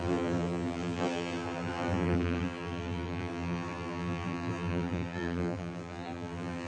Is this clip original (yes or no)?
no